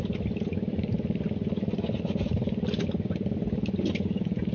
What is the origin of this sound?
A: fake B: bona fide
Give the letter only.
B